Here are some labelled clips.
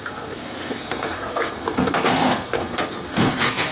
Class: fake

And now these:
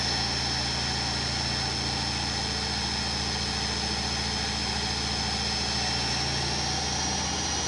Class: real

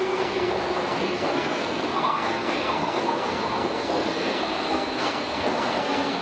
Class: fake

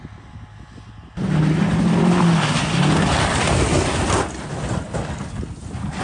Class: real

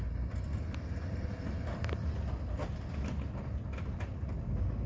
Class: real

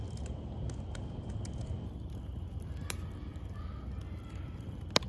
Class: real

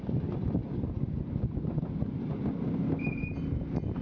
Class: real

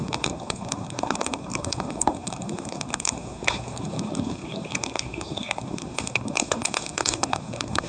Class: fake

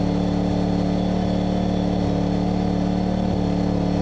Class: real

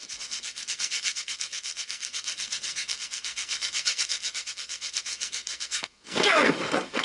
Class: fake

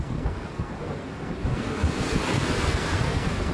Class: fake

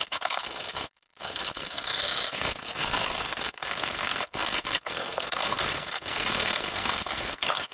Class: fake